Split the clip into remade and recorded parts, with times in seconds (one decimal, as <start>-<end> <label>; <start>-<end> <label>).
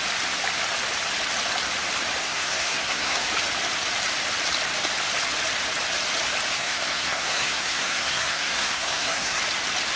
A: 0.0-2.2 recorded; 2.2-3.3 remade; 3.3-6.5 recorded; 6.5-9.4 remade; 9.4-10.0 recorded